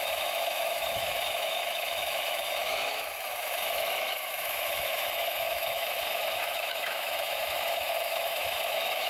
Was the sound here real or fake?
fake